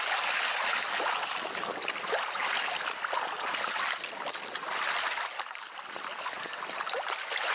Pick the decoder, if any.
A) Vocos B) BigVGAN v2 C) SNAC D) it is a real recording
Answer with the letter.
D